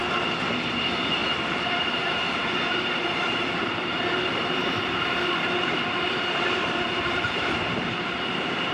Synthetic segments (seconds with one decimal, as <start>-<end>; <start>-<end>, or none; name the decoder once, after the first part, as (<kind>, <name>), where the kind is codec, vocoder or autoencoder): 0.7-8.7 (vocoder, BigVGAN v2)